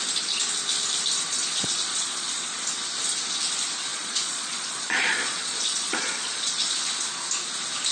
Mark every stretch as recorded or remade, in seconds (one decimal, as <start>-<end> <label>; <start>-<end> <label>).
0.0-1.3 recorded; 1.3-2.3 remade; 2.3-3.9 recorded; 3.9-6.8 remade; 6.8-7.9 recorded